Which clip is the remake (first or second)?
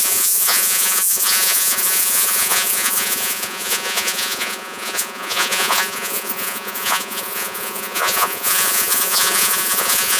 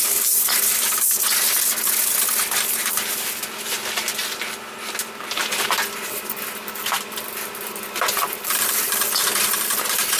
first